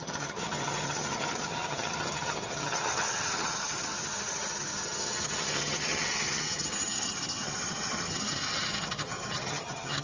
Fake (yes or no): yes